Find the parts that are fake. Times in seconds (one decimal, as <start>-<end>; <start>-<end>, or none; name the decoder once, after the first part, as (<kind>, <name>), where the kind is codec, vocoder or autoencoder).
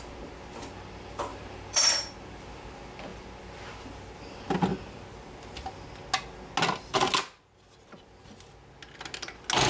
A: 1.3-1.8 (vocoder, BigVGAN v2); 4.7-5.6